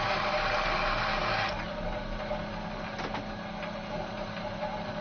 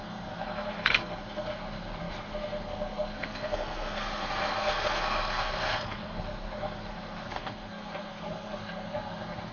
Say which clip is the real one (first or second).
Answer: first